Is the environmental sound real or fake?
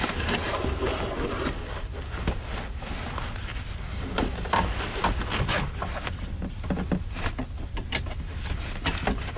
real